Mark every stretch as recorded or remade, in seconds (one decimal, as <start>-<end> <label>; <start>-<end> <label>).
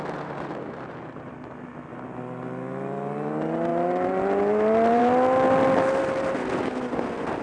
0.0-3.7 recorded; 3.7-5.0 remade; 5.0-7.4 recorded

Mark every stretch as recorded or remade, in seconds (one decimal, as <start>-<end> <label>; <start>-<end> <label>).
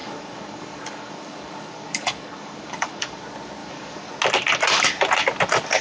0.0-3.2 remade; 3.2-3.6 recorded; 3.6-4.1 remade; 4.1-5.8 recorded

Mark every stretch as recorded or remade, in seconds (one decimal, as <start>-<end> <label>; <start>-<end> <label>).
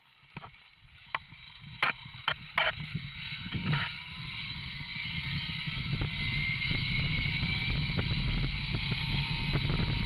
0.0-10.1 recorded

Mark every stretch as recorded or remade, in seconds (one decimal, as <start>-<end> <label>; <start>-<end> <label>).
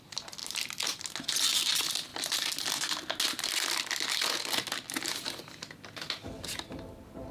0.0-0.4 recorded; 0.4-1.0 remade; 1.0-7.3 recorded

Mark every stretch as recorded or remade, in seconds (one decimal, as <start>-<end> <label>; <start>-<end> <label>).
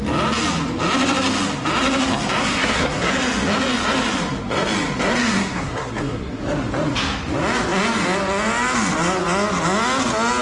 0.0-2.4 recorded; 2.4-3.1 remade; 3.1-5.2 recorded; 5.2-6.4 remade; 6.4-10.4 recorded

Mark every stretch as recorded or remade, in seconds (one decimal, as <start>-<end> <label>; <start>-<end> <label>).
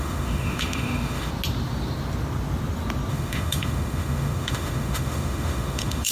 0.0-1.3 remade; 1.3-3.1 recorded; 3.1-6.1 remade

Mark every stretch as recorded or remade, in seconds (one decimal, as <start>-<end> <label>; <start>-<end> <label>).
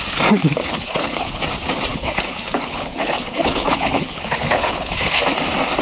0.0-0.4 recorded; 0.4-1.4 remade; 1.4-1.9 recorded; 1.9-5.2 remade; 5.2-5.8 recorded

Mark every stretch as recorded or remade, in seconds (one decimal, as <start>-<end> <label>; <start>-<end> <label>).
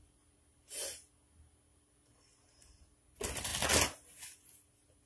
0.0-5.1 recorded